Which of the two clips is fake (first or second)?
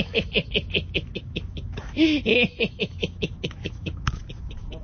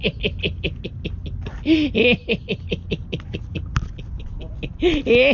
first